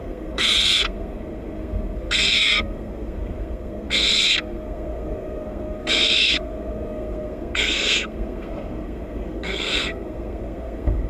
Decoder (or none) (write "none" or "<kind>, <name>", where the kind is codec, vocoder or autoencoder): codec, SNAC